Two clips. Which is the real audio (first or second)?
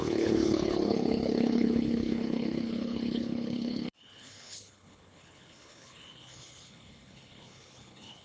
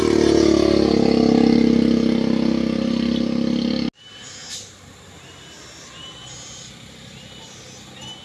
second